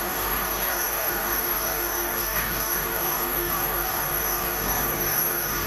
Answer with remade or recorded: remade